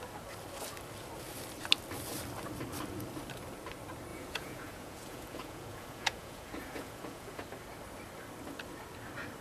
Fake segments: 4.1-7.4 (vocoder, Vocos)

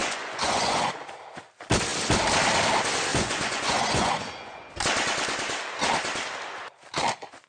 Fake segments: 0.0-1.0 (vocoder, Vocos); 3.1-4.7

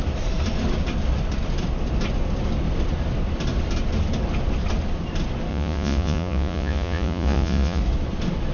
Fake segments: 5.5-7.8 (vocoder, Vocos)

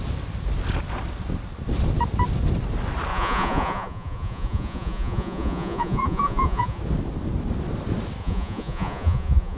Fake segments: 3.1-6.8 (vocoder, Vocos); 8.2-9.6

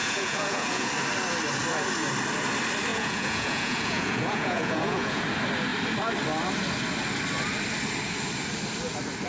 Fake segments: 0.0-0.9 (vocoder, Vocos); 2.9-5.2

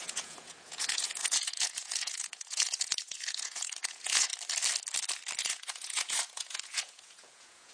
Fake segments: 0.0-4.3 (vocoder, Vocos); 5.4-7.7

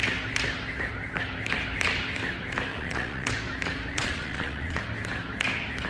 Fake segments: 2.7-3.3 (vocoder, Vocos); 3.9-4.8

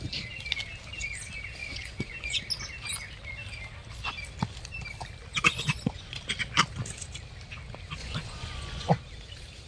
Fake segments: 1.6-2.4 (vocoder, Vocos); 5.3-6.2; 8.0-8.9